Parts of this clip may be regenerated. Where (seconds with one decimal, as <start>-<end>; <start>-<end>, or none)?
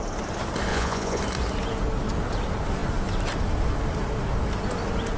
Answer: 0.7-1.2